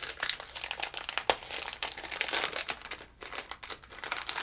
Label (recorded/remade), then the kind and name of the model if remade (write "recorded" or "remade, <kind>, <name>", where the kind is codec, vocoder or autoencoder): recorded